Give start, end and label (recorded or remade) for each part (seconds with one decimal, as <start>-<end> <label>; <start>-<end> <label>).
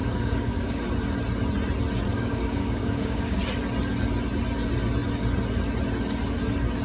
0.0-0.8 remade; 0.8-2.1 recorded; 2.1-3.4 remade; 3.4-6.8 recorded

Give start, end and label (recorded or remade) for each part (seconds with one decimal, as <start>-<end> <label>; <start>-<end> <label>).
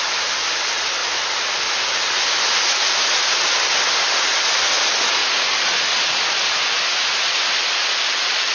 0.0-5.2 recorded; 5.2-6.2 remade; 6.2-8.5 recorded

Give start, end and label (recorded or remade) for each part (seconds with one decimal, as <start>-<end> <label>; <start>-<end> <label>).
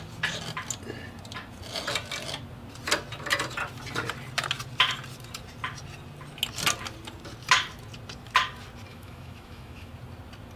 0.0-8.9 recorded; 8.9-9.9 remade; 9.9-10.6 recorded